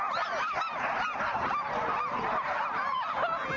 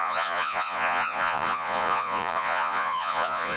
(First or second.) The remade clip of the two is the second